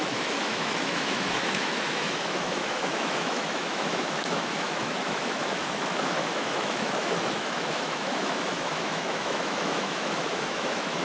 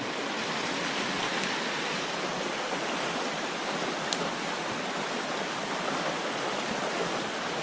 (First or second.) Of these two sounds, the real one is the second